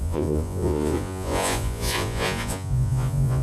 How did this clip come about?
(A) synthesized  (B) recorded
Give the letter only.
A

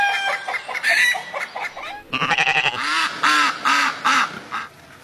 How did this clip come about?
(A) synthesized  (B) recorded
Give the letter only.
B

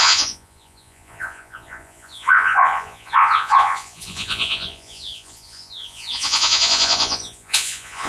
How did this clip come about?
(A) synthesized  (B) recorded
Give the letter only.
A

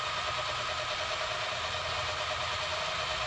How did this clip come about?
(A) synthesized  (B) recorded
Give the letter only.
B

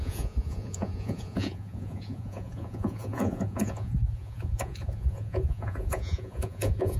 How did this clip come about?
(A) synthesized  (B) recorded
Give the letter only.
A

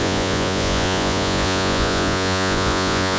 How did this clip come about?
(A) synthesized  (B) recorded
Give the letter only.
A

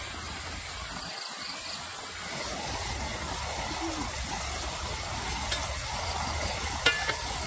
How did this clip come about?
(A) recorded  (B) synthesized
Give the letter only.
A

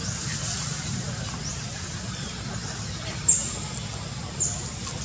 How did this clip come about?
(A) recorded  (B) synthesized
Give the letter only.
A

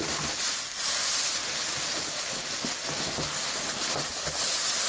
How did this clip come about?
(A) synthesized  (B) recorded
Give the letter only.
B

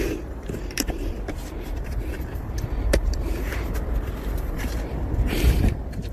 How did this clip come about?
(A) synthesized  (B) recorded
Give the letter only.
A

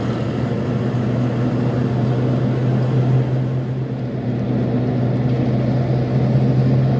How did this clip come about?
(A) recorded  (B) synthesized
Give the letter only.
A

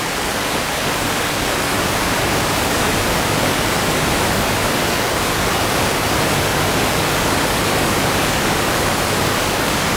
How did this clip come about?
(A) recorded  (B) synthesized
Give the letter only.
B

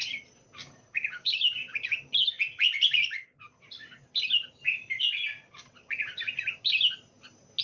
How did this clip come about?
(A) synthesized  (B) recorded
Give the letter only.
B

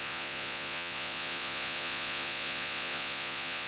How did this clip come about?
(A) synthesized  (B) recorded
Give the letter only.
A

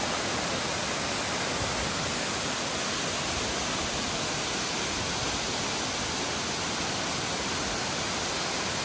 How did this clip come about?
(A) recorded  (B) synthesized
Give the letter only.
A